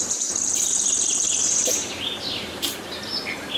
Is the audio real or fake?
fake